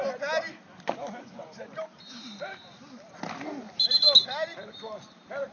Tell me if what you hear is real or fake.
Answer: real